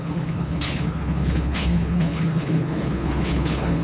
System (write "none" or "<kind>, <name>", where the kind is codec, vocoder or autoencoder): codec, HILCodec